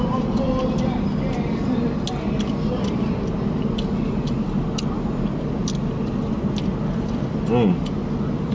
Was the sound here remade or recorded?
recorded